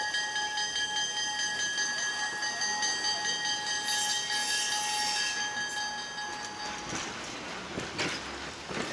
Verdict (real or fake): real